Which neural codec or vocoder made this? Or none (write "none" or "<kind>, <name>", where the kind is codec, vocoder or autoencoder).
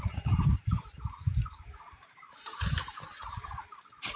vocoder, BigVGAN v2